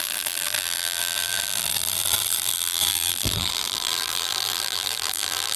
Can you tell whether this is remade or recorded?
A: remade